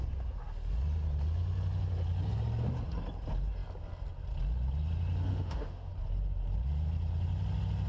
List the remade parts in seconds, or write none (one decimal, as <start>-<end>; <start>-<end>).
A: 5.3-5.9